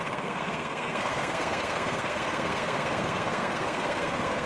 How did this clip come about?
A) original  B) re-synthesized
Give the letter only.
B